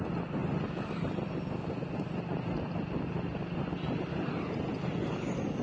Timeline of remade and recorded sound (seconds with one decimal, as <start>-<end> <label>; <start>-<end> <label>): 0.0-5.6 recorded